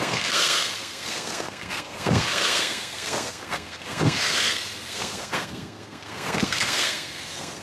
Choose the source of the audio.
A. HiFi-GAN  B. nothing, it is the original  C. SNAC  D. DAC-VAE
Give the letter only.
C